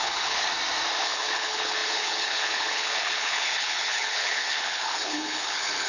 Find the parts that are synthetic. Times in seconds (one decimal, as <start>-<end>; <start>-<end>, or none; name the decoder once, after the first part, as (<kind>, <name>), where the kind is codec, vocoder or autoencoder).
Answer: 0.0-0.5 (codec, HILCodec); 1.0-5.9